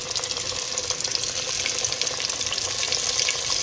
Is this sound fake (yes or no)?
no